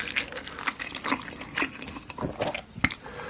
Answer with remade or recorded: recorded